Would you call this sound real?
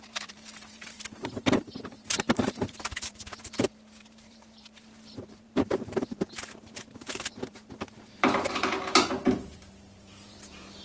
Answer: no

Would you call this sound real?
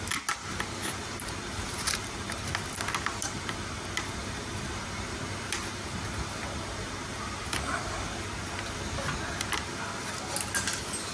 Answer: yes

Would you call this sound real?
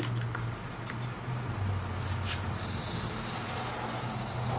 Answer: yes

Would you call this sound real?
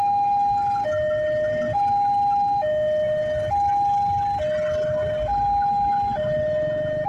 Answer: yes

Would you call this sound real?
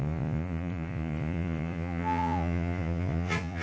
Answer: no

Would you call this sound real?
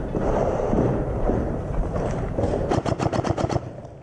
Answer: no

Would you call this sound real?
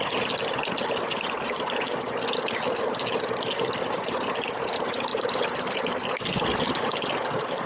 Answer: yes